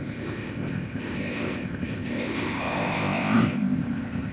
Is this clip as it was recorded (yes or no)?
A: no